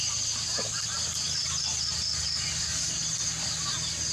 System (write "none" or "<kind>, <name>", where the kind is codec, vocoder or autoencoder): none